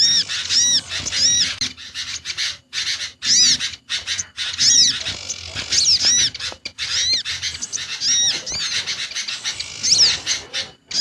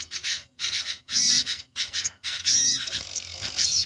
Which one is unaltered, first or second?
first